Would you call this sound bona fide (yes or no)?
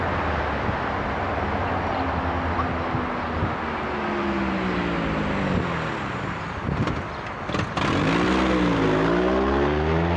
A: yes